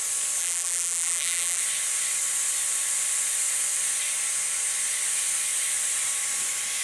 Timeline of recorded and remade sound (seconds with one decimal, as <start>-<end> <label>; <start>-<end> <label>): 0.0-0.4 recorded; 0.4-1.6 remade; 1.6-6.8 recorded